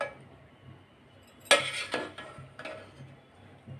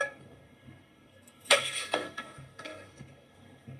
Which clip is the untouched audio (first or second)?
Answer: first